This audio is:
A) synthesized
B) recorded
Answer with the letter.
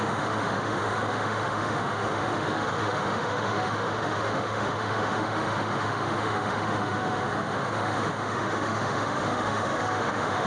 A